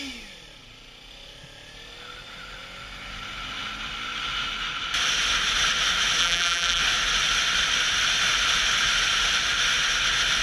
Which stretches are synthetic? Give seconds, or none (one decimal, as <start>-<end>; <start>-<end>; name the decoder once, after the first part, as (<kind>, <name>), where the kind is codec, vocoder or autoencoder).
6.2-6.8 (vocoder, BigVGAN v2)